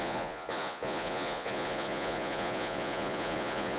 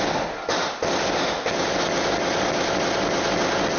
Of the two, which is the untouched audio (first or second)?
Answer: second